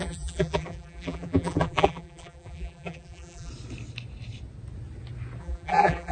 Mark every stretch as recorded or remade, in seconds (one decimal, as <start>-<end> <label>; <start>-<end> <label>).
0.0-3.5 remade; 3.5-5.4 recorded; 5.4-6.1 remade

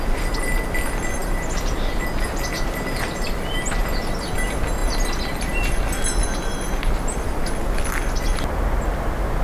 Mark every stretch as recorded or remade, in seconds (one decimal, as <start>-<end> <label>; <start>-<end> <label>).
0.0-9.4 recorded